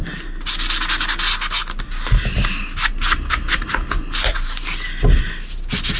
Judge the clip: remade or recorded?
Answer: recorded